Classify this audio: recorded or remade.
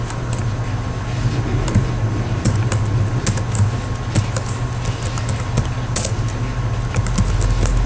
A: recorded